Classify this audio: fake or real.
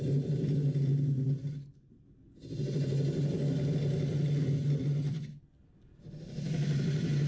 real